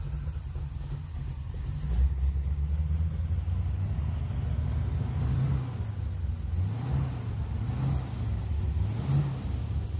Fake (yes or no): no